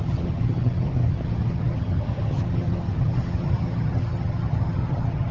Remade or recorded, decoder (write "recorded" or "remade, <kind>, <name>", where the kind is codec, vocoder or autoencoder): remade, vocoder, HiFi-GAN